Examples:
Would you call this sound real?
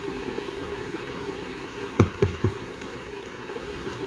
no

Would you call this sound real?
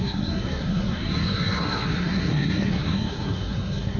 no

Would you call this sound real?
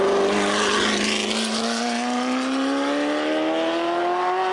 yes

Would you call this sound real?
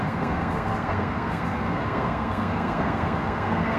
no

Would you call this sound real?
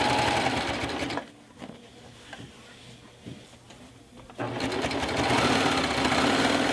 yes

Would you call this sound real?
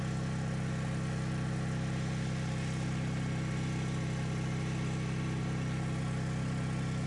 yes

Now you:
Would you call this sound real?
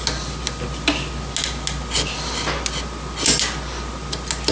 yes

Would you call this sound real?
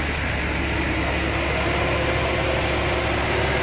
yes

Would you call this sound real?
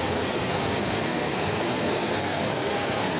no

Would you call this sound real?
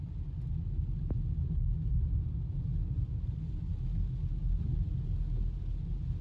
yes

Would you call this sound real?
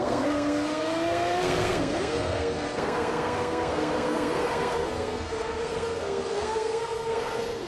no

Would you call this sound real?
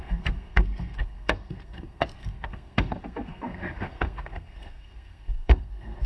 no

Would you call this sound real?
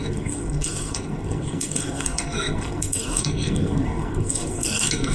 no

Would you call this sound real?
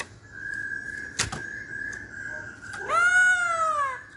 yes